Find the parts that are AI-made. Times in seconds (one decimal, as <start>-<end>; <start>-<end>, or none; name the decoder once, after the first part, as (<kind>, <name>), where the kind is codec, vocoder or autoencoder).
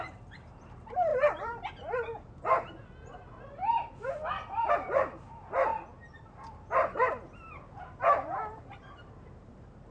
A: 0.0-1.1 (vocoder, BigVGAN v2); 4.7-5.7; 6.3-9.9